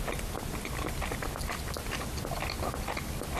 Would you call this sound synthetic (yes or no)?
no